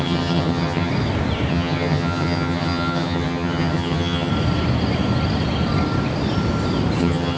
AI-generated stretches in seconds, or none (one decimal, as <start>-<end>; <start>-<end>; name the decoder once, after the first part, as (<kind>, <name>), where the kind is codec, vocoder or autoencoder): 0.0-0.9 (vocoder, HiFi-GAN); 1.5-4.3; 7.0-7.4

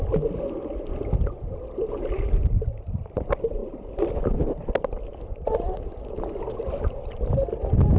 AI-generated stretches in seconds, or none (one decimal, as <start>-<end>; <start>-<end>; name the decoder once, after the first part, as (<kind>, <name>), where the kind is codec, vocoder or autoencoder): none

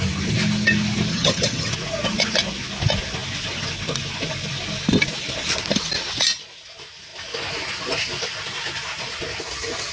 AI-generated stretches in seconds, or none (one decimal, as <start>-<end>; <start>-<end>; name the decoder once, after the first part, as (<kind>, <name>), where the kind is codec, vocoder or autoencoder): 1.1-1.7 (vocoder, HiFi-GAN)

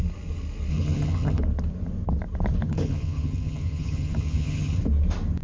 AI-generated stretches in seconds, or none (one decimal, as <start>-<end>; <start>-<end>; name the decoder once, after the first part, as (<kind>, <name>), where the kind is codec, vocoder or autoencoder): 0.7-1.4 (vocoder, HiFi-GAN); 2.6-4.8

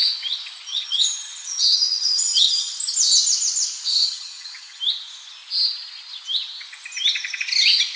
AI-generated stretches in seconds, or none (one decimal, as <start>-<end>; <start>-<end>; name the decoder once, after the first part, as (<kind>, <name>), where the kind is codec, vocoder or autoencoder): 0.7-1.6 (vocoder, HiFi-GAN); 2.0-2.7; 3.9-4.8

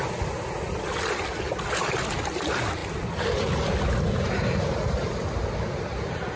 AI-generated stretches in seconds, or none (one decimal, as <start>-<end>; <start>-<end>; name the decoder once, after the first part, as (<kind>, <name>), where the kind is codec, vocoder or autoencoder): none

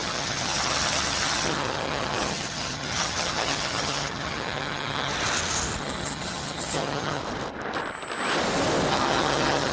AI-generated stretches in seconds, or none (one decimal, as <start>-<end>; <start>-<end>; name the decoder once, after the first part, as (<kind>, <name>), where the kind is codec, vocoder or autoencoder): 0.0-5.1 (vocoder, HiFi-GAN); 5.8-7.2; 8.9-9.7

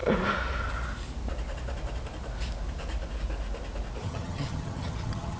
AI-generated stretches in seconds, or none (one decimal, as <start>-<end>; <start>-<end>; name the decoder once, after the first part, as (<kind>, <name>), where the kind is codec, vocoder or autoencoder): 4.0-5.4 (vocoder, HiFi-GAN)